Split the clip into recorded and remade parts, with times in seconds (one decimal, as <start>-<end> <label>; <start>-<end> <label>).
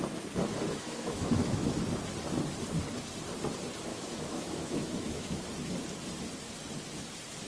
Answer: 0.0-0.7 recorded; 0.7-1.8 remade; 1.8-3.9 recorded; 3.9-5.4 remade; 5.4-7.5 recorded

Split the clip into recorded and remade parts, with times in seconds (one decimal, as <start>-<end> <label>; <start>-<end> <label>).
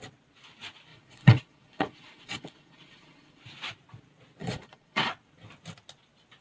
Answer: 0.0-0.9 recorded; 0.9-3.4 remade; 3.4-4.4 recorded; 4.4-5.1 remade; 5.1-6.4 recorded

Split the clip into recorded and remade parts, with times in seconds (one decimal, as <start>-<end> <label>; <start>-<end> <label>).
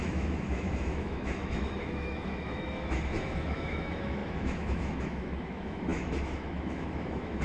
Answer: 0.0-7.4 remade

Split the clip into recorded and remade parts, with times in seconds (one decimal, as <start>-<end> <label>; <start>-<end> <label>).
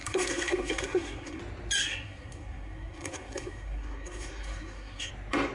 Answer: 0.0-1.4 remade; 1.4-1.8 recorded; 1.8-5.1 remade; 5.1-5.5 recorded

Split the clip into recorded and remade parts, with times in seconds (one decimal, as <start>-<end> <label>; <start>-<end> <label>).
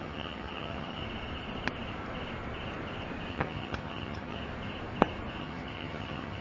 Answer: 0.0-1.0 remade; 1.0-3.3 recorded; 3.3-4.4 remade; 4.4-5.4 recorded; 5.4-6.4 remade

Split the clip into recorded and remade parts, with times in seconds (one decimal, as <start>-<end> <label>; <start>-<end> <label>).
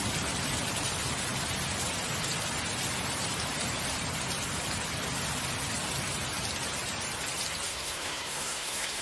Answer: 0.0-7.7 recorded; 7.7-9.0 remade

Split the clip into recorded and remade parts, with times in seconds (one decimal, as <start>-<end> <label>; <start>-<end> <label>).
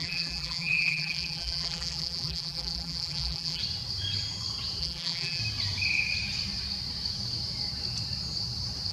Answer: 0.0-3.6 remade; 3.6-4.8 recorded; 4.8-5.4 remade; 5.4-8.9 recorded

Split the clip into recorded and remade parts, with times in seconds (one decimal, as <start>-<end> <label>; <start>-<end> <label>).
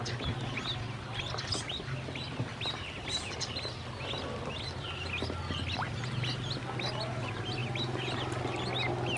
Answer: 0.0-9.2 recorded